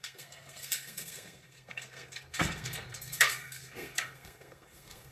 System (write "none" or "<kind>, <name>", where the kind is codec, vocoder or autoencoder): codec, SNAC